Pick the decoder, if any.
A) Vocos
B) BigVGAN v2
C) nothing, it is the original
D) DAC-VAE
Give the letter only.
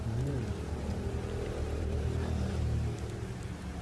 B